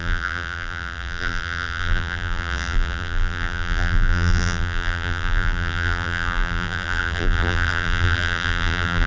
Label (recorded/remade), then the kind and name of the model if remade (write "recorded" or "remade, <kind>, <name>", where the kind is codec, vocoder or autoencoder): remade, vocoder, BigVGAN v2